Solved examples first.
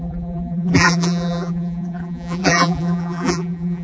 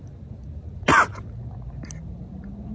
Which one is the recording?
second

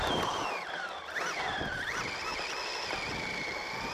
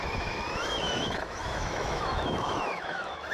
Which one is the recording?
first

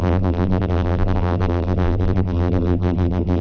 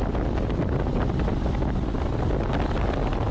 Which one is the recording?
second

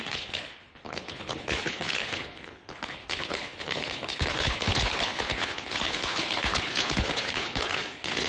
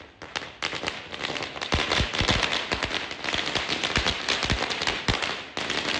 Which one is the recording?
second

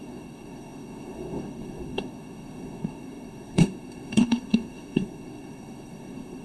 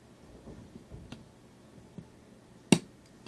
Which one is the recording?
second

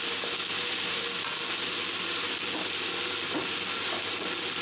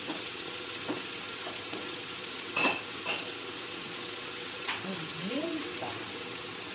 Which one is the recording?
first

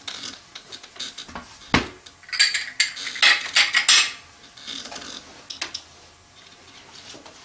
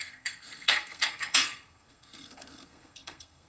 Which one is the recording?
first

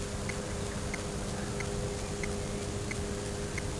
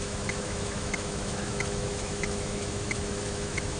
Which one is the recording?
first